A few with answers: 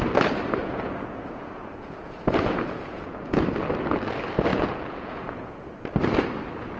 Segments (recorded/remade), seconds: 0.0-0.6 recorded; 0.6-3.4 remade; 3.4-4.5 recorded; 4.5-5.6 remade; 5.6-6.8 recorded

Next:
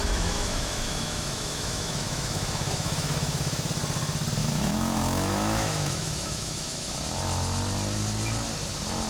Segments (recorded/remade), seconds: 0.0-3.7 remade; 3.7-4.4 recorded; 4.4-7.0 remade; 7.0-9.1 recorded

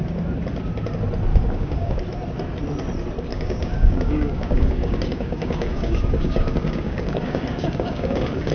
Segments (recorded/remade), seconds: 0.0-1.3 recorded; 1.3-2.0 remade; 2.0-3.3 recorded; 3.3-8.5 remade

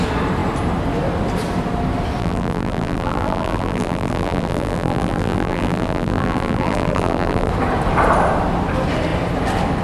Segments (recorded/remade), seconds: 0.0-2.2 recorded; 2.2-7.5 remade; 7.5-9.8 recorded

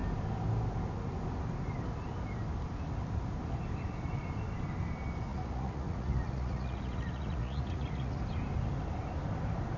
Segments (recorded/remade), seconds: 0.0-5.3 recorded; 5.3-8.2 remade; 8.2-9.8 recorded

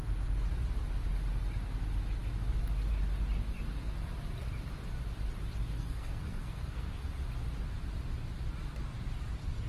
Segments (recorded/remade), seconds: 0.0-5.7 recorded; 5.7-7.0 remade; 7.0-9.7 recorded

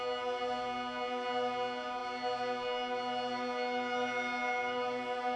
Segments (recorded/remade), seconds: 0.0-5.4 recorded